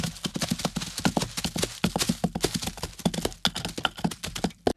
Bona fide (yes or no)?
yes